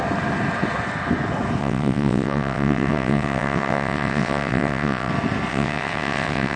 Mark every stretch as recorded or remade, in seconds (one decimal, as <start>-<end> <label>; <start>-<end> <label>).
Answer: 0.0-1.6 recorded; 1.6-5.1 remade; 5.1-5.5 recorded; 5.5-6.6 remade